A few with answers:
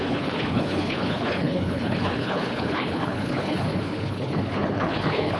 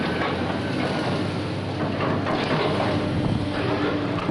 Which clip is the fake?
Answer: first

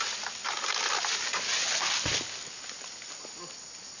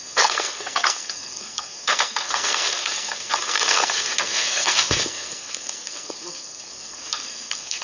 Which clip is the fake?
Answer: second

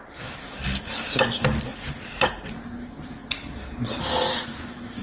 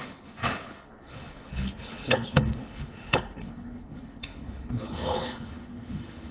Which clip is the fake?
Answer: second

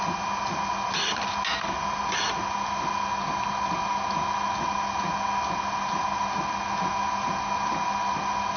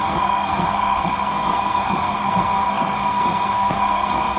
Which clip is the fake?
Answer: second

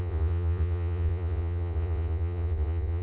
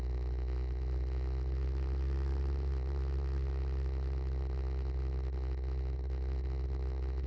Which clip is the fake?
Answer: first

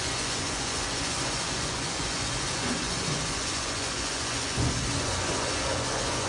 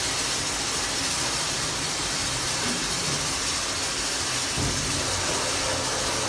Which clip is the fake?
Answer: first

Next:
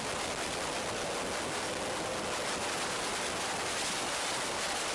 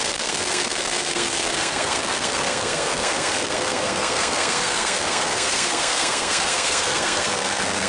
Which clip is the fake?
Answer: second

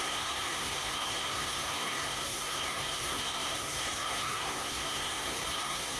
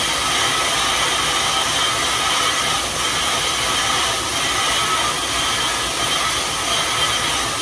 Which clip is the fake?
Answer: first